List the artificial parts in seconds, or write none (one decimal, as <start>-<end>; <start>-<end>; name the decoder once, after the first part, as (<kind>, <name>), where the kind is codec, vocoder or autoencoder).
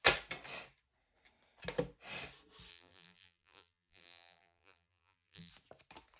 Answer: 2.7-5.5 (vocoder, BigVGAN v2)